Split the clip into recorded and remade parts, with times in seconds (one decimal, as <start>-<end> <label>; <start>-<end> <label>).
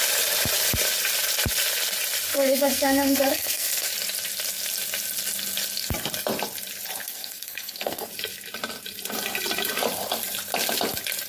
0.0-2.3 recorded; 2.3-3.9 remade; 3.9-7.0 recorded; 7.0-8.1 remade; 8.1-11.3 recorded